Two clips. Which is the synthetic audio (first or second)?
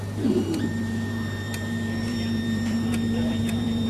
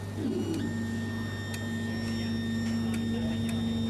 first